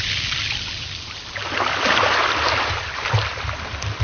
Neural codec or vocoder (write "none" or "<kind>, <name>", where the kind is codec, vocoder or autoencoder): none